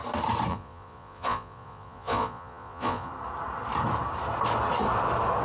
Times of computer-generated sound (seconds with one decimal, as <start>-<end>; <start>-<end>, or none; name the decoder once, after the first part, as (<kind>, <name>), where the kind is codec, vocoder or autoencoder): 0.5-3.1 (vocoder, Vocos)